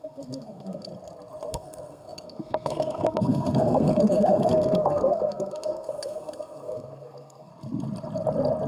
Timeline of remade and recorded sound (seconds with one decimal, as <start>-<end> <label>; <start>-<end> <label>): 0.0-0.9 remade; 0.9-1.5 recorded; 1.5-7.5 remade; 7.5-8.7 recorded